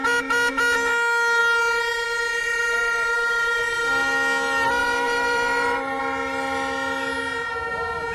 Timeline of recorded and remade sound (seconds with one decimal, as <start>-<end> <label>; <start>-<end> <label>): 0.0-4.8 recorded; 4.8-6.0 remade; 6.0-8.1 recorded